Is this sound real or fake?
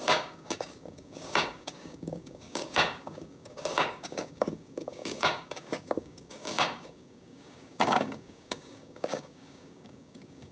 fake